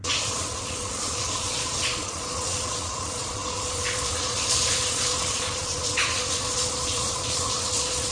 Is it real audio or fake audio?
fake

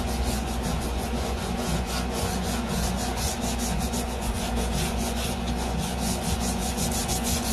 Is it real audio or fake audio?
fake